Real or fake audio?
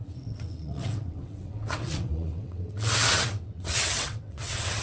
fake